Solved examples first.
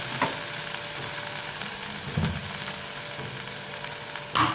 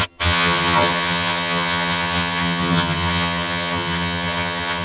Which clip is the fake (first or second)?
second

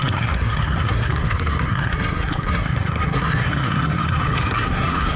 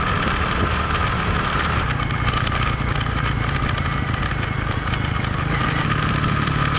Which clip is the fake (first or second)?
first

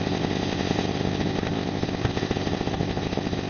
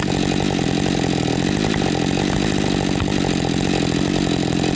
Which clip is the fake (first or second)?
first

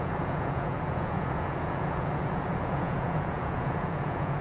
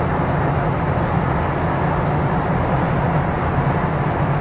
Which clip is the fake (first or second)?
first